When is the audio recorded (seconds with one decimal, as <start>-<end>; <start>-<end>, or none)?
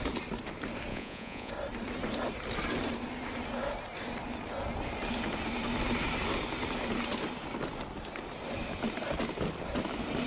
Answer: 0.0-0.9; 1.5-10.3